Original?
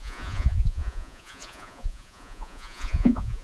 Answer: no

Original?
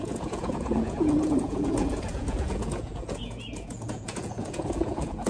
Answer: no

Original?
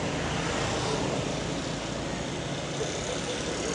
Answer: yes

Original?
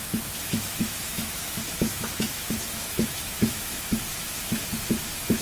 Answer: no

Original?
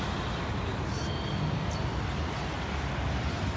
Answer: yes